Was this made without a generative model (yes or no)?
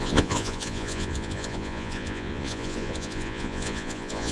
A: no